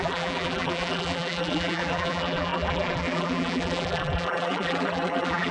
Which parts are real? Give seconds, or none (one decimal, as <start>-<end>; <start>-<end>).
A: none